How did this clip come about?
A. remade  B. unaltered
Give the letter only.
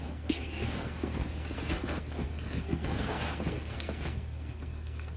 A